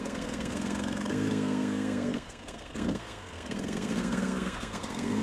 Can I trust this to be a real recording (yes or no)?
no